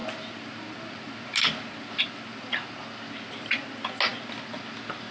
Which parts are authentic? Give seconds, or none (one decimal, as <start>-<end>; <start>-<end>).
0.0-5.1